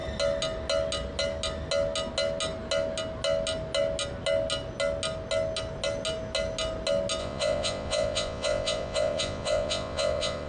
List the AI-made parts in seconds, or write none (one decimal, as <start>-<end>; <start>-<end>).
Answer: 7.2-10.5